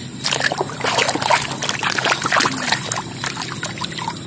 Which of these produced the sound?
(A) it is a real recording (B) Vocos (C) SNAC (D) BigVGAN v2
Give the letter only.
A